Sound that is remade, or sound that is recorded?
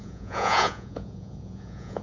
remade